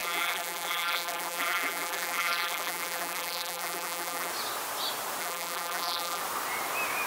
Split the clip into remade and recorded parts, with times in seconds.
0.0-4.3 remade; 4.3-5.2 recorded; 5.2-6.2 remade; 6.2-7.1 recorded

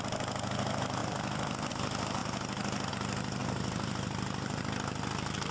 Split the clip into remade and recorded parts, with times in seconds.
0.0-1.0 recorded; 1.0-1.7 remade; 1.7-3.4 recorded; 3.4-4.6 remade; 4.6-5.5 recorded

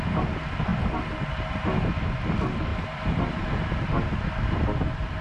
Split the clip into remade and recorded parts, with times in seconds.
0.0-2.7 recorded; 2.7-4.6 remade; 4.6-5.2 recorded

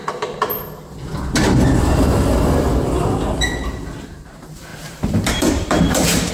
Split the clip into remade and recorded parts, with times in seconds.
0.0-3.8 recorded; 3.8-6.3 remade